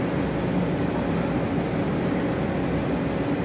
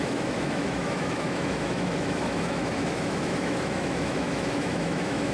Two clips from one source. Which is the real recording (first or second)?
first